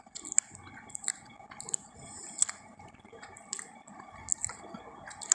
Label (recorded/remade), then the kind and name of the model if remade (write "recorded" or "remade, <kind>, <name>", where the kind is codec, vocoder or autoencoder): recorded